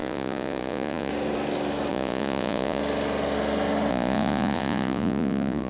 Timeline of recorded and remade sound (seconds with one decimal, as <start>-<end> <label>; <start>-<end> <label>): 0.0-1.1 remade; 1.1-1.9 recorded; 1.9-2.8 remade; 2.8-3.9 recorded; 3.9-5.7 remade